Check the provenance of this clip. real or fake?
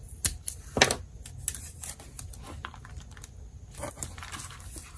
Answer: real